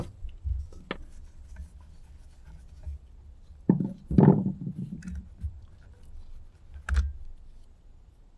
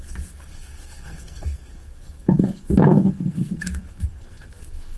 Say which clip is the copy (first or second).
second